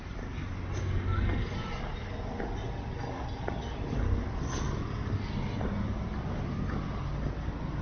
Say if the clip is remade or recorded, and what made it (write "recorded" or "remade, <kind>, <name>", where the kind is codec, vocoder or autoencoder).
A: recorded